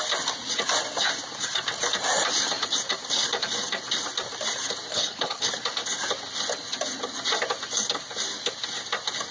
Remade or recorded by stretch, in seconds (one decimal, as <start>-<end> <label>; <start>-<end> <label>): 0.0-4.9 recorded; 4.9-5.5 remade; 5.5-9.3 recorded